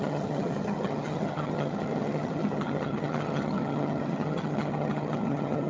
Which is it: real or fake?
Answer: fake